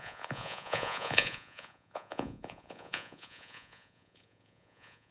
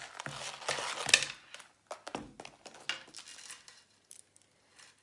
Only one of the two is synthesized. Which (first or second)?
first